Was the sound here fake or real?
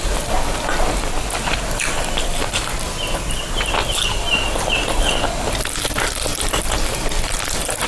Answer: real